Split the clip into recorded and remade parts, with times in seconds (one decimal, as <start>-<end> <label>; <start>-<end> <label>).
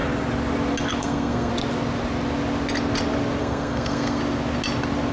0.0-1.0 recorded; 1.0-1.5 remade; 1.5-3.4 recorded; 3.4-4.2 remade; 4.2-5.1 recorded